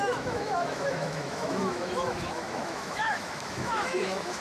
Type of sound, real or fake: fake